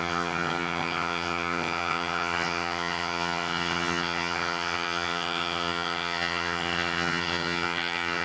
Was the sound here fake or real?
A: fake